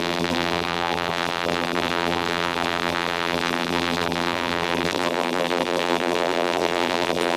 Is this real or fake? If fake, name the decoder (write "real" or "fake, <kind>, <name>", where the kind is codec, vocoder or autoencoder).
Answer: fake, vocoder, BigVGAN v2